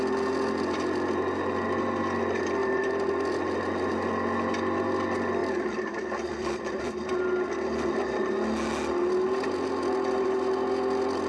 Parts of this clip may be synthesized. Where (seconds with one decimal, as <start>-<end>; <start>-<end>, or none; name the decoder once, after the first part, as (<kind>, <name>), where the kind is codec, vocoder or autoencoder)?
2.6-3.1 (vocoder, BigVGAN v2); 5.4-6.8